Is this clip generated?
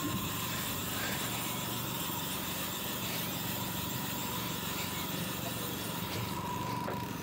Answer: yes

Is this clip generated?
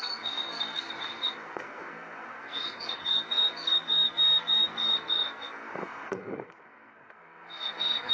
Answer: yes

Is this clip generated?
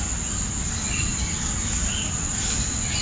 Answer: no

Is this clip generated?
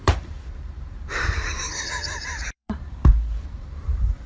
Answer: yes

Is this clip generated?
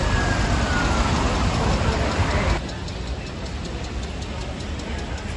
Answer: no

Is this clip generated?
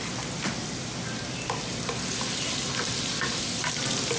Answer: no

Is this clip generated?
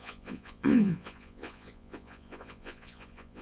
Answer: yes